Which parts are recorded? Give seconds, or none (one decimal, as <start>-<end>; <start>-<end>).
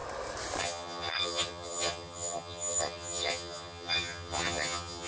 0.0-0.6